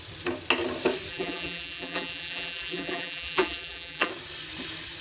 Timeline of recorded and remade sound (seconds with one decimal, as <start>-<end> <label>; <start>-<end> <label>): 0.0-1.1 recorded; 1.1-4.1 remade; 4.1-5.0 recorded